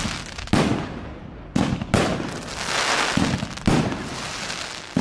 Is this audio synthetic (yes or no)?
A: no